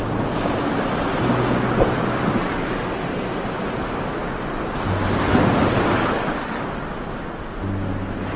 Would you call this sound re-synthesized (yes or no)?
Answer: no